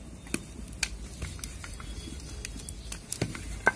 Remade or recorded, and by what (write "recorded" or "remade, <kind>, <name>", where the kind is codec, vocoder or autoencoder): recorded